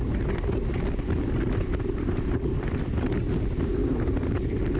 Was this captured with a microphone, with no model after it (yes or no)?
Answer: yes